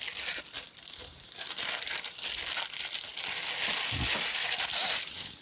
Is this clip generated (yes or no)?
no